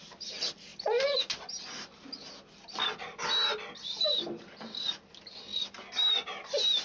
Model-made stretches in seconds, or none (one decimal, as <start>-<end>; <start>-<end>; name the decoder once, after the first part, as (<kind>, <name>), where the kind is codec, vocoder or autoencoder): none